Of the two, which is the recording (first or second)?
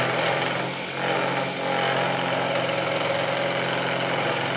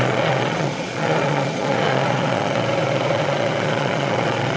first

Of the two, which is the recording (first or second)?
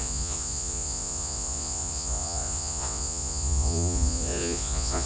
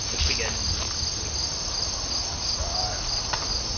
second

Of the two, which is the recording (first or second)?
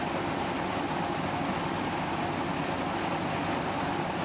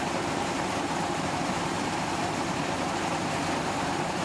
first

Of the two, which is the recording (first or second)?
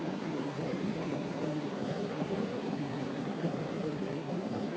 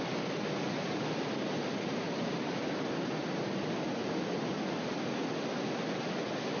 second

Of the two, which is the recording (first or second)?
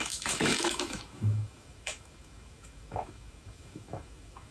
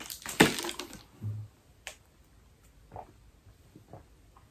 second